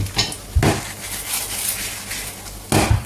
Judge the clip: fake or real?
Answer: real